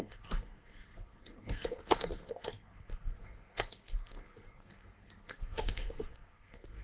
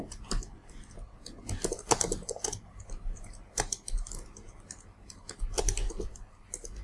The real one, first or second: second